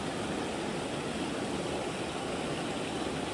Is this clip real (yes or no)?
yes